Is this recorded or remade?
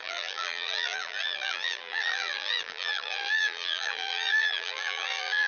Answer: remade